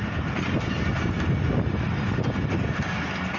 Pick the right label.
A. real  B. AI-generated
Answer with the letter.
A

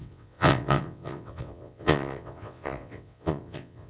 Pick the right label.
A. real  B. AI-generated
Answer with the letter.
B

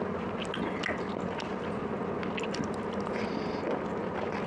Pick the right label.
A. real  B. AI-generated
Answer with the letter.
A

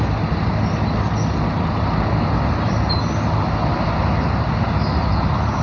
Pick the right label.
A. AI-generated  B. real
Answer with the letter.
B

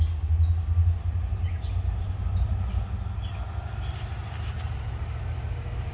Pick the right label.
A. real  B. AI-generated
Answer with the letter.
A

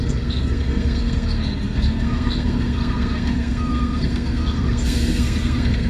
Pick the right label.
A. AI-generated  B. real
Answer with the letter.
A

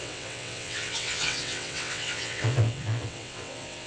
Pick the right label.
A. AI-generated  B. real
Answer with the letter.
A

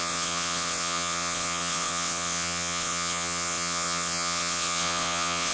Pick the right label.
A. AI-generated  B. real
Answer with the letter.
A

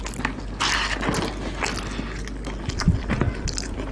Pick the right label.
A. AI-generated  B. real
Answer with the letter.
B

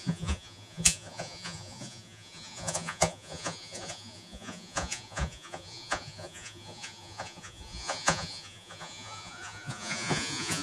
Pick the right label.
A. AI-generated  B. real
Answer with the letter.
A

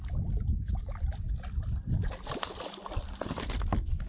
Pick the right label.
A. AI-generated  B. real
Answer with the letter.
B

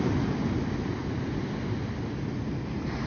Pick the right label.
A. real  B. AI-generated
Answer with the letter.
A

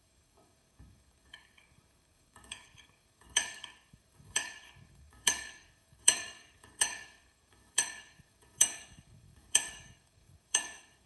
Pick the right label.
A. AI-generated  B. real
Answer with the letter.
A